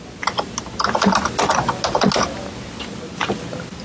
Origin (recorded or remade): recorded